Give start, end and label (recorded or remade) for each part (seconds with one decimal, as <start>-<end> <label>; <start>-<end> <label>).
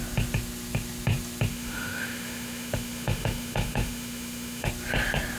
0.0-1.5 recorded; 1.5-4.7 remade; 4.7-5.4 recorded